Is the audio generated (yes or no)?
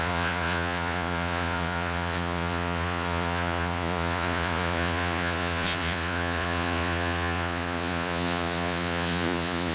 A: yes